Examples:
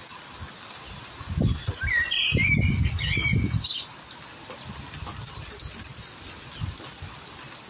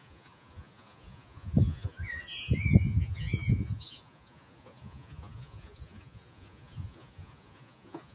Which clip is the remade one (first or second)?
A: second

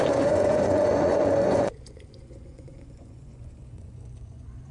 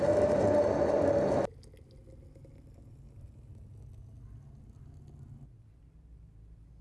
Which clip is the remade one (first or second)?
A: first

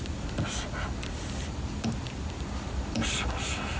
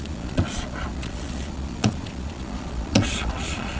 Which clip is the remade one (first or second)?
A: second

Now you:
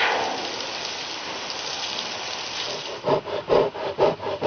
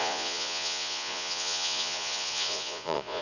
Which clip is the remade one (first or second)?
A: second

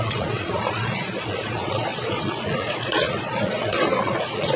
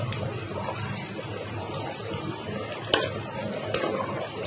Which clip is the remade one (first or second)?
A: first